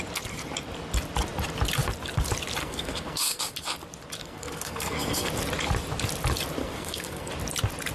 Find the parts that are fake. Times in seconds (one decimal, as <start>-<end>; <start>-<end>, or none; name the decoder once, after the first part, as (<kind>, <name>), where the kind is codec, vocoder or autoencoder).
2.6-3.4 (codec, SNAC); 4.2-5.3; 6.6-7.3